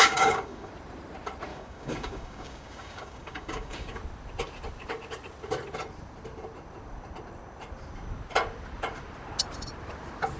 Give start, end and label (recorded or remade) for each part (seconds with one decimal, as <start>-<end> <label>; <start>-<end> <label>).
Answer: 0.0-0.7 remade; 0.7-1.5 recorded; 1.5-4.0 remade; 4.0-10.4 recorded